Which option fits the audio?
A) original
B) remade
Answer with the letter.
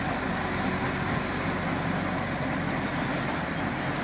A